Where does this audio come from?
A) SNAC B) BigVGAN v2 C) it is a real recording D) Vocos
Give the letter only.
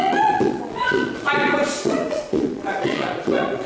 D